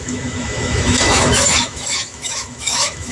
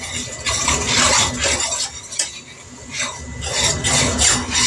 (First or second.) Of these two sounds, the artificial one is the first